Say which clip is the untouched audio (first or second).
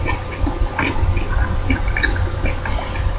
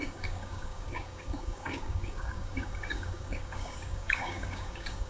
first